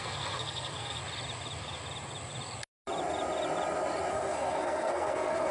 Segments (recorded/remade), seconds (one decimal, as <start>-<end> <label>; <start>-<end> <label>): 0.0-1.0 remade; 1.0-4.1 recorded; 4.1-5.5 remade